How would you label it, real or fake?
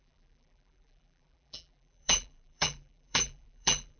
fake